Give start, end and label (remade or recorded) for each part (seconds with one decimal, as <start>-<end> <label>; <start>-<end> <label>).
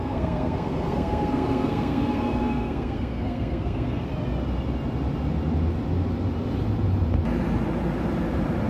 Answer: 0.0-4.1 remade; 4.1-8.7 recorded